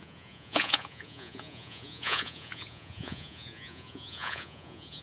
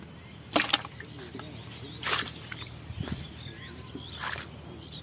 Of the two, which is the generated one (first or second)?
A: first